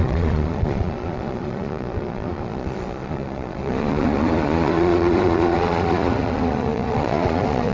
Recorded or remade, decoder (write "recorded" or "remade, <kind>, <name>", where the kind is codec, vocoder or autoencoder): remade, vocoder, Vocos